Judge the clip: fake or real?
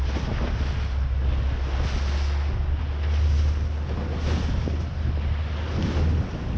real